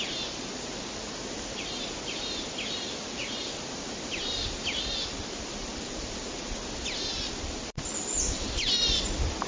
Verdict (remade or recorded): recorded